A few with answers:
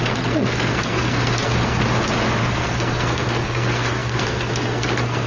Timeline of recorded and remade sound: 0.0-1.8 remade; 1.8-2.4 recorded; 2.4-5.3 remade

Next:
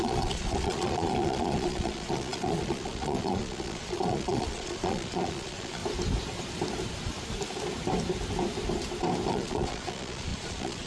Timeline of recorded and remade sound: 0.0-5.8 remade; 5.8-9.3 recorded; 9.3-10.9 remade

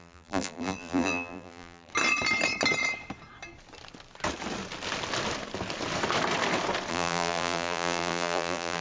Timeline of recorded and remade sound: 0.0-1.9 remade; 1.9-6.9 recorded; 6.9-8.8 remade

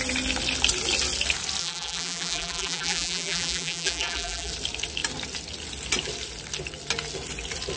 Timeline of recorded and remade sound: 0.0-1.6 recorded; 1.6-4.5 remade; 4.5-7.8 recorded

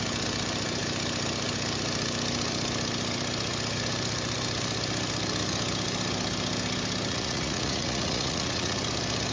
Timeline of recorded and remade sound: 0.0-7.1 recorded; 7.1-8.8 remade; 8.8-9.3 recorded

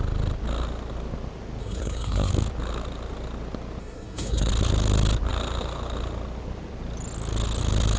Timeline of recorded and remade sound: 0.0-1.6 recorded; 1.6-2.3 remade; 2.3-3.8 recorded; 3.8-4.5 remade; 4.5-8.0 recorded

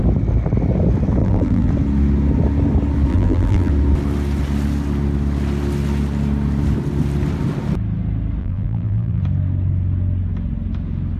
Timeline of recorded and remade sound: 0.0-1.2 recorded; 1.2-1.7 remade; 1.7-3.1 recorded; 3.1-3.7 remade; 3.7-8.4 recorded; 8.4-9.2 remade; 9.2-11.2 recorded

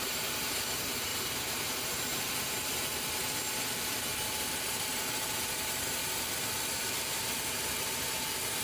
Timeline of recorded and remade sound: 0.0-6.0 remade; 6.0-8.6 recorded